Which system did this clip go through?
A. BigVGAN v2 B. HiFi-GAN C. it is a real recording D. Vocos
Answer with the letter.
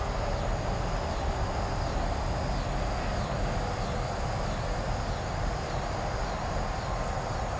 C